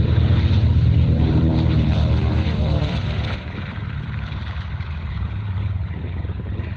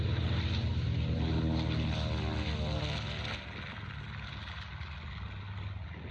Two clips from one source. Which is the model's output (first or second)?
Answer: first